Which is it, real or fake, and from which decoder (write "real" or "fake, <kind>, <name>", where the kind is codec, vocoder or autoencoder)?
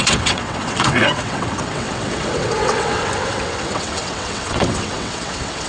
fake, vocoder, WaveNeXt